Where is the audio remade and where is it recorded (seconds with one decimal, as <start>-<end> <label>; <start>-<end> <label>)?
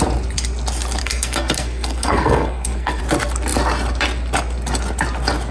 0.0-1.0 recorded; 1.0-3.0 remade; 3.0-5.5 recorded